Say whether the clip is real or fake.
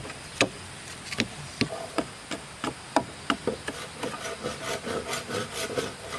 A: real